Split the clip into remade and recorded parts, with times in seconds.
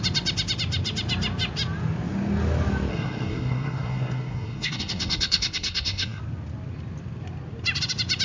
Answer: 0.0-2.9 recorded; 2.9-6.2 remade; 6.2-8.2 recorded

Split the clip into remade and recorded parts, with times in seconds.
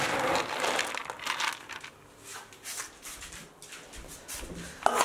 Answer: 0.0-5.0 recorded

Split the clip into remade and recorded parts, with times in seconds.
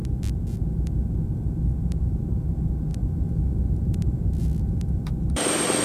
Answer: 0.0-2.0 recorded; 2.0-2.9 remade; 2.9-5.1 recorded; 5.1-5.8 remade